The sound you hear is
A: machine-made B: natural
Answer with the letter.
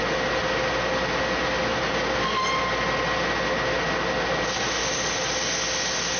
B